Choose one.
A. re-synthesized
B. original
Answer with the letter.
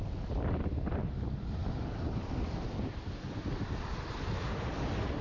A